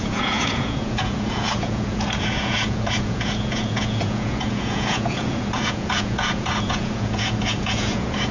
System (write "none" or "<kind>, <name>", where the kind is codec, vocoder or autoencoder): vocoder, Vocos